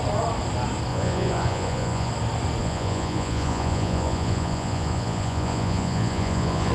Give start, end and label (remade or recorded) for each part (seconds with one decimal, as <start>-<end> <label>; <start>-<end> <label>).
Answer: 0.0-0.9 recorded; 0.9-2.1 remade; 2.1-2.6 recorded; 2.6-6.7 remade